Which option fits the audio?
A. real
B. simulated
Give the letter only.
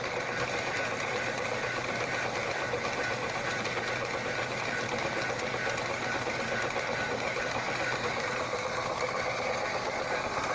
B